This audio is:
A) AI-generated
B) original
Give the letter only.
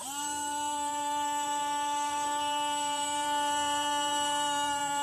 A